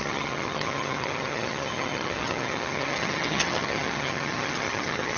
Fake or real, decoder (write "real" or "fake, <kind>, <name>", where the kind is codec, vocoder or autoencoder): fake, vocoder, HiFi-GAN